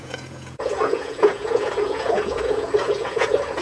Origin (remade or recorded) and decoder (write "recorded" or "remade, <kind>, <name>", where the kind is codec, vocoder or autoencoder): remade, vocoder, Vocos